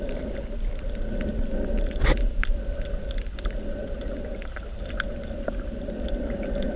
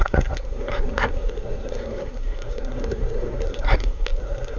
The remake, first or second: second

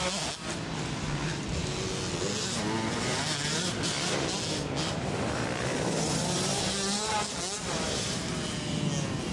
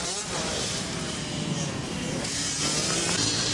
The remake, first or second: second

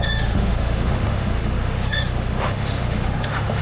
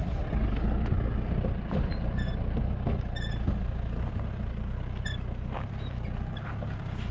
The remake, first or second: first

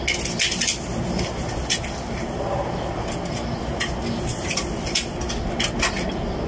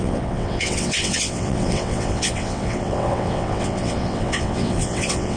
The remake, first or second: second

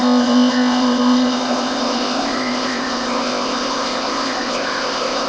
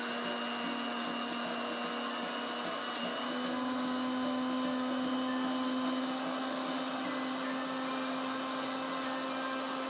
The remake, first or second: first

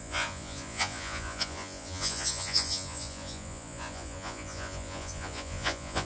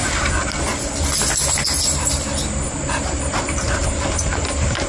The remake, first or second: first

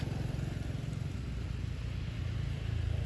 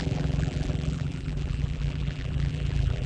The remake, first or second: second